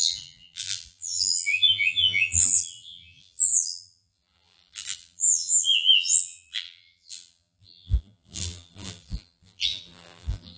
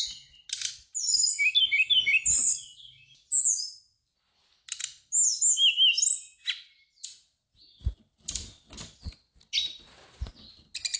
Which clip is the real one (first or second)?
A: second